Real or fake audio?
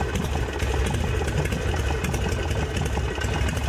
real